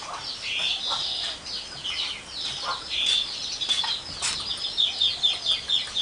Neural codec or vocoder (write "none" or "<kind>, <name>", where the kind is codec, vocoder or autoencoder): none